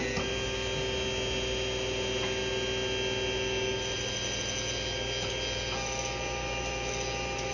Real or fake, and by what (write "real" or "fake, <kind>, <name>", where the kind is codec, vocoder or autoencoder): real